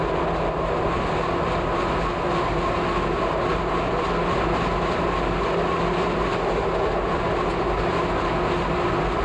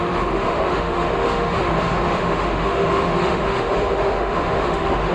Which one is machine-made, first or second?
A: second